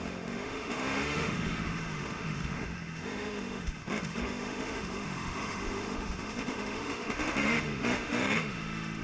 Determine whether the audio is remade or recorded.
remade